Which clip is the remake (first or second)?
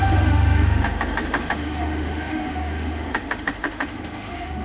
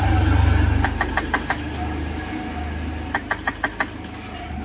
first